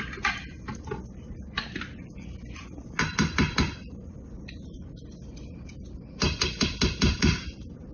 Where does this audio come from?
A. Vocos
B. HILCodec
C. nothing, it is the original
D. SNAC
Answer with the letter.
C